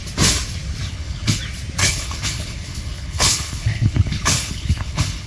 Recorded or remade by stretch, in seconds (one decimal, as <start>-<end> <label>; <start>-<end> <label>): 0.0-0.9 recorded; 0.9-1.4 remade; 1.4-1.8 recorded; 1.8-5.3 remade